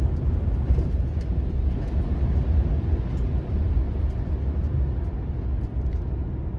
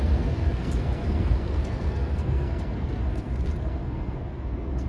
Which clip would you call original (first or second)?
first